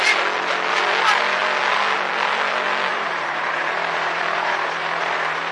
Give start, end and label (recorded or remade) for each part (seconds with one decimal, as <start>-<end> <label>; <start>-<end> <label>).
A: 0.0-2.9 recorded; 2.9-5.5 remade